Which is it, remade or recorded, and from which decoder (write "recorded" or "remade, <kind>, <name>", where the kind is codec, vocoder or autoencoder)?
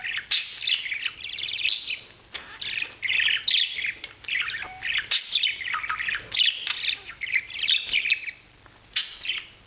recorded